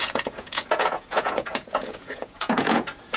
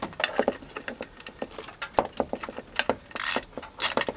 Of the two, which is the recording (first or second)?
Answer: second